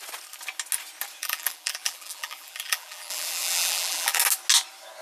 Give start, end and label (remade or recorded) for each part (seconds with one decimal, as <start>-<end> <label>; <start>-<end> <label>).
0.0-1.2 recorded; 1.2-4.2 remade; 4.2-5.0 recorded

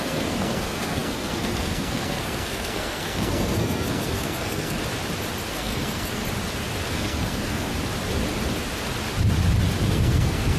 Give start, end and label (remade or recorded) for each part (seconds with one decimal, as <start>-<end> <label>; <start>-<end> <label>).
0.0-4.8 remade; 4.8-5.5 recorded; 5.5-6.2 remade; 6.2-6.9 recorded; 6.9-7.7 remade; 7.7-9.9 recorded; 9.9-10.6 remade